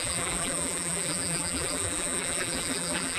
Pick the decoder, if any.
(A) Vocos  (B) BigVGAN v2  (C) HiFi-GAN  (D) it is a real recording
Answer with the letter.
B